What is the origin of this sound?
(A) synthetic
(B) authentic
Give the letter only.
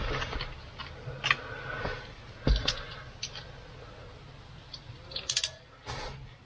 B